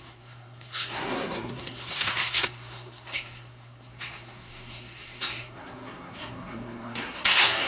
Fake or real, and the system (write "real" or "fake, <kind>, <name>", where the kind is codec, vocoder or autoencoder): fake, codec, SNAC